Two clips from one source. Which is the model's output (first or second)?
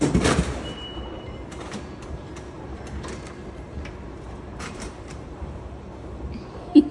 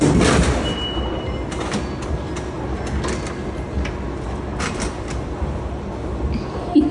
first